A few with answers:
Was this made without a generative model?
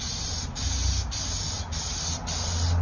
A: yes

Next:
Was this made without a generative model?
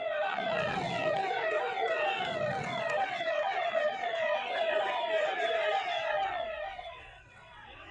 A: no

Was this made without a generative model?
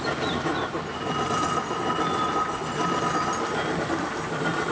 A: yes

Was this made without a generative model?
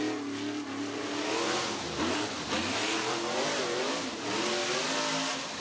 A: yes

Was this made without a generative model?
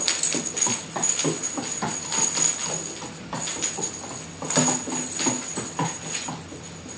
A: yes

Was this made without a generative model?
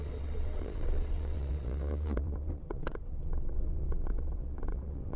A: no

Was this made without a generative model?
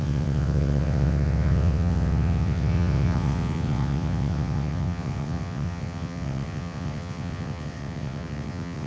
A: no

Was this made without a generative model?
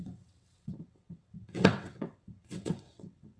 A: no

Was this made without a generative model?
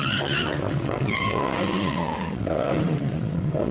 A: no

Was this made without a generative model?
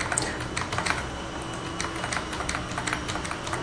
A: yes